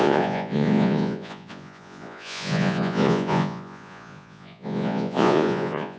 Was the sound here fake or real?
fake